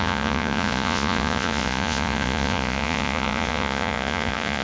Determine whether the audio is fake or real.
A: fake